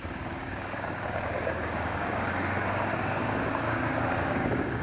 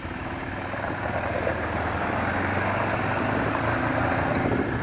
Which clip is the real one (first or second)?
second